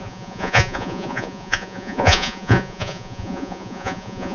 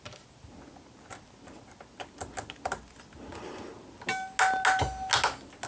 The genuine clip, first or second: second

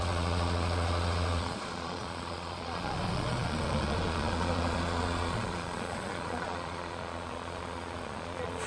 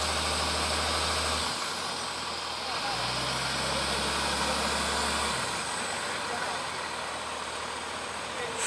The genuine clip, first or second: second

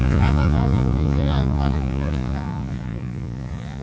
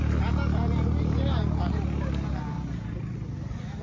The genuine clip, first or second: second